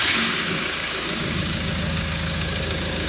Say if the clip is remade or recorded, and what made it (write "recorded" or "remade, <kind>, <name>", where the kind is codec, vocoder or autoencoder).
remade, codec, DAC